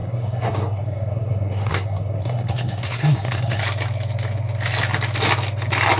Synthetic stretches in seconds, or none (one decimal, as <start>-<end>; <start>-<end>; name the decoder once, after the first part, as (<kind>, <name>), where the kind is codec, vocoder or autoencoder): 0.0-3.6 (codec, SNAC)